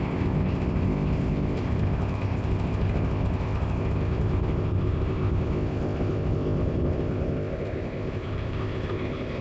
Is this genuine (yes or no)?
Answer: no